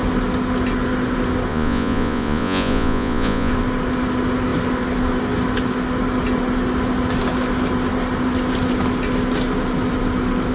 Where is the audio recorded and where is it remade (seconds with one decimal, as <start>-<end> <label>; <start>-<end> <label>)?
0.0-1.5 recorded; 1.5-3.5 remade; 3.5-10.5 recorded